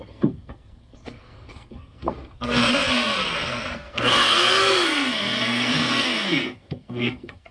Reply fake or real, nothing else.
fake